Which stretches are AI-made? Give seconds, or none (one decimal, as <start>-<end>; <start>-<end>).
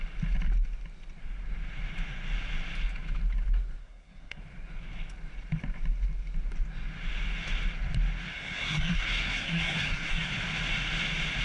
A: 3.8-4.4; 8.3-10.3